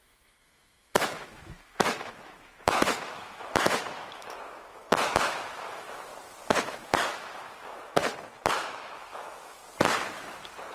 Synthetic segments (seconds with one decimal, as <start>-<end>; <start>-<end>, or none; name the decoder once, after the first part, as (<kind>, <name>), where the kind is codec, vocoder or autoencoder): 0.0-6.1 (autoencoder, DAC-VAE); 6.6-8.0; 8.5-9.6